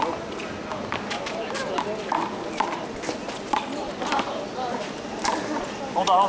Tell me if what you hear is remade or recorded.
recorded